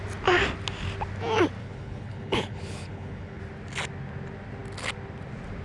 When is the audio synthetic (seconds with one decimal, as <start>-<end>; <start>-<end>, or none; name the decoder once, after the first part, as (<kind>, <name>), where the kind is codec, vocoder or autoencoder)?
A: 1.6-3.4 (codec, HILCodec)